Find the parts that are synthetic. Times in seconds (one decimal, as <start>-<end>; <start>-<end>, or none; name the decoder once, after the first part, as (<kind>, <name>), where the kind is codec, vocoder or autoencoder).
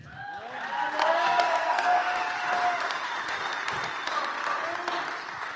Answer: 1.0-2.2 (codec, SNAC)